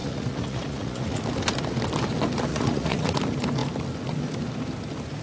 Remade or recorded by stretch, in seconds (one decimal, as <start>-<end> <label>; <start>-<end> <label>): 0.0-1.2 remade; 1.2-2.5 recorded; 2.5-3.2 remade; 3.2-5.2 recorded